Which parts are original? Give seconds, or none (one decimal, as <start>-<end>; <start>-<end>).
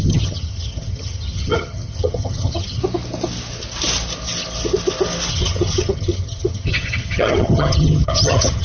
2.8-5.3